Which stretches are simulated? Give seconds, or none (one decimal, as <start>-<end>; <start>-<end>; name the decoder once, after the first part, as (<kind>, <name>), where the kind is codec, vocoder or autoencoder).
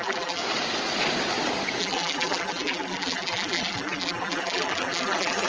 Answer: 0.0-0.4 (vocoder, BigVGAN v2); 1.8-5.5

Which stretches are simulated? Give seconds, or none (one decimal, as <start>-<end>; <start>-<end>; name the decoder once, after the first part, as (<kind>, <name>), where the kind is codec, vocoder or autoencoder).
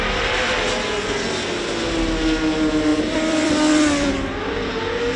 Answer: 2.9-4.1 (vocoder, BigVGAN v2)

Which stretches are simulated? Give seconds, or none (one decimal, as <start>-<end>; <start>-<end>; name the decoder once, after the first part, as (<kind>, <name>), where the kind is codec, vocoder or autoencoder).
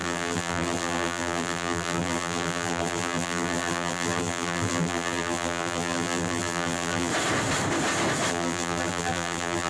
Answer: 0.0-7.1 (vocoder, BigVGAN v2); 8.3-9.7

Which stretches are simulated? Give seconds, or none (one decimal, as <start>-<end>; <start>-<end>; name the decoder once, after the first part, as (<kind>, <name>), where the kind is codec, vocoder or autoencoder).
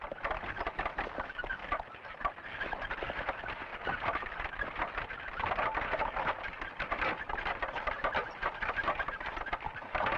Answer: none